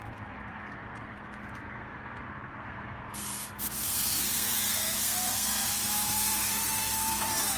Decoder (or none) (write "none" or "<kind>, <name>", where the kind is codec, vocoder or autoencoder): codec, SNAC